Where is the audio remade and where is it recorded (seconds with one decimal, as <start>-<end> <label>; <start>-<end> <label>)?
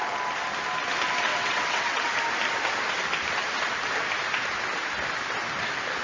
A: 0.0-1.3 recorded; 1.3-2.1 remade; 2.1-6.0 recorded